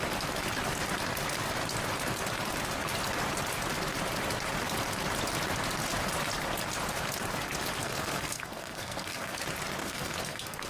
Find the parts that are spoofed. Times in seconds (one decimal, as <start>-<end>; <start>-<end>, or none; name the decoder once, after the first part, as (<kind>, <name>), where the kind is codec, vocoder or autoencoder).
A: 7.8-9.4 (codec, SNAC); 9.8-10.7